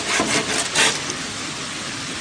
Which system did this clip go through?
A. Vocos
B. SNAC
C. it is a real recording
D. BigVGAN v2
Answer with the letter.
D